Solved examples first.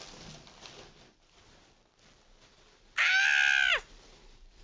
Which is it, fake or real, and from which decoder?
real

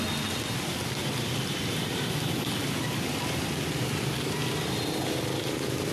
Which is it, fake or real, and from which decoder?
real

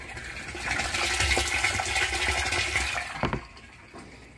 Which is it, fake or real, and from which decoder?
real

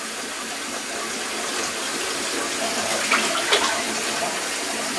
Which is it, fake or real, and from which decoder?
real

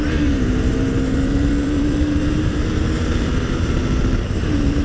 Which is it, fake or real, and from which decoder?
fake, vocoder, BigVGAN v2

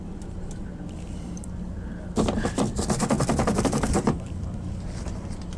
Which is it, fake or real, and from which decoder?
fake, vocoder, BigVGAN v2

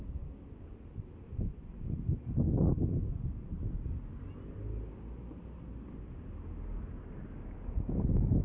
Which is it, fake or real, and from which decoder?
real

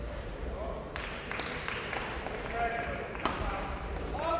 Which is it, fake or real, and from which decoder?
fake, vocoder, BigVGAN v2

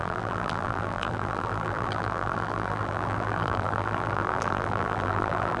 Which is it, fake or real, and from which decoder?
fake, vocoder, BigVGAN v2